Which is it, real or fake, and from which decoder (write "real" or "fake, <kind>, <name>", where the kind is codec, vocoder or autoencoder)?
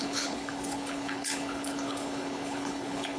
fake, codec, HILCodec